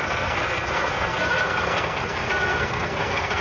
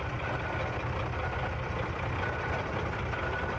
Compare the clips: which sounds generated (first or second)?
first